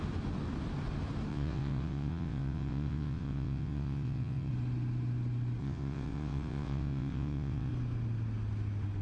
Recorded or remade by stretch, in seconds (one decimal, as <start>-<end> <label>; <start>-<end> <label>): 0.0-1.3 recorded; 1.3-4.5 remade; 4.5-5.6 recorded; 5.6-7.7 remade; 7.7-9.0 recorded